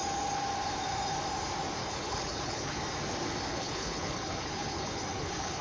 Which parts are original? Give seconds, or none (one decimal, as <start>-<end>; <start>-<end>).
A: 0.0-1.8; 2.8-3.5